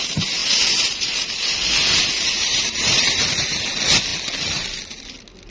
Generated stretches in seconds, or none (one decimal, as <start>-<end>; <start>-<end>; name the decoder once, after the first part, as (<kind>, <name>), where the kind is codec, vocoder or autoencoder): 2.5-3.2 (vocoder, BigVGAN v2)